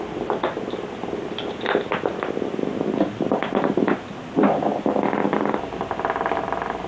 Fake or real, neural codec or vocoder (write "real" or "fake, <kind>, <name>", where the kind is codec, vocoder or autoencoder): real